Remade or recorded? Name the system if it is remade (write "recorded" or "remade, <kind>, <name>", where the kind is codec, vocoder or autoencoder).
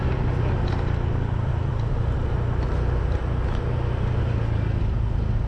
recorded